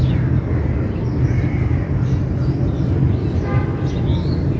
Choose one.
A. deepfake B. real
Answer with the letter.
B